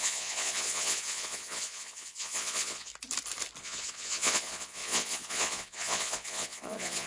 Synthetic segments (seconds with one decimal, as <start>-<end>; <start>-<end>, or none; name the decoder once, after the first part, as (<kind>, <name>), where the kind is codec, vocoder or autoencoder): 0.0-2.9 (vocoder, Vocos); 3.6-7.1